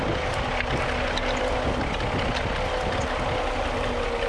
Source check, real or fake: real